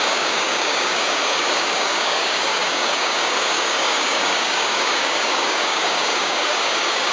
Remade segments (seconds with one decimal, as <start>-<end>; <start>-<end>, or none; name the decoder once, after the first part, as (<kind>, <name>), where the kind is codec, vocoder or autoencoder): 0.0-7.1 (codec, DAC)